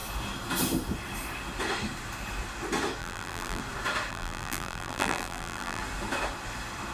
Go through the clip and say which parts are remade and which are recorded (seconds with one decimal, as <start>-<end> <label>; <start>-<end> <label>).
0.0-3.0 recorded; 3.0-3.6 remade; 3.6-4.1 recorded; 4.1-5.8 remade; 5.8-6.9 recorded